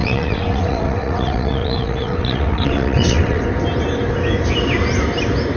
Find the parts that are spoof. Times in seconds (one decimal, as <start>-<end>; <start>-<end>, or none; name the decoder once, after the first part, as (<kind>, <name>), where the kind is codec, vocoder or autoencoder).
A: 0.0-3.4 (vocoder, WaveNeXt)